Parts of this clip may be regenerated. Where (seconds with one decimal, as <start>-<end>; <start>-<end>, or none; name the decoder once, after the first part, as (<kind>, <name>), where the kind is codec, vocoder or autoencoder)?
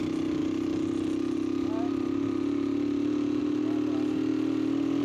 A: none